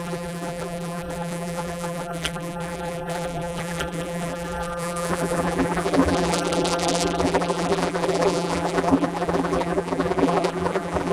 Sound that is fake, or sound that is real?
fake